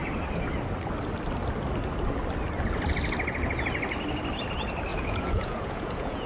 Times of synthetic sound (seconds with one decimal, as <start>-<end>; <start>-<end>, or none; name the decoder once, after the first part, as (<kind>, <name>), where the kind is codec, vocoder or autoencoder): 4.9-6.3 (vocoder, Vocos)